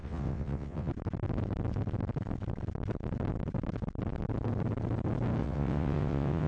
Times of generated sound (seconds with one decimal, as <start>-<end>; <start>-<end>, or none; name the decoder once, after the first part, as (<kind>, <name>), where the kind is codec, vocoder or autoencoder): 0.0-0.9 (vocoder, WaveNeXt); 5.4-6.5